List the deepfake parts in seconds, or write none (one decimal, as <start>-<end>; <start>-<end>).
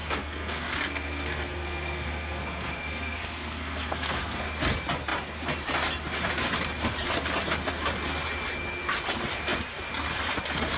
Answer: 0.0-4.4